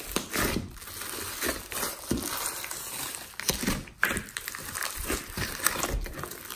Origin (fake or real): real